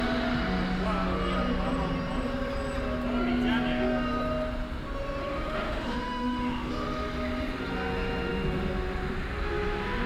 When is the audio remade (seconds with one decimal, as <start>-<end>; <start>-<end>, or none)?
5.2-6.7